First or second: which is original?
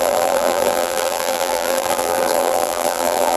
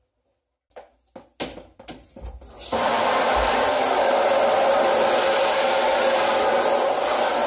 second